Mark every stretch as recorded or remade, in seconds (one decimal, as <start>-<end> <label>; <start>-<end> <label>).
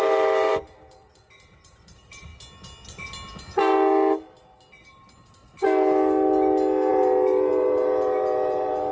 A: 0.0-2.3 remade; 2.3-6.9 recorded; 6.9-8.9 remade